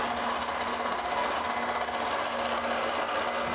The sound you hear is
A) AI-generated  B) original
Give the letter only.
B